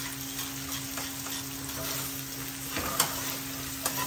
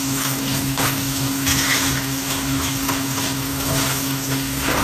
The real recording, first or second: first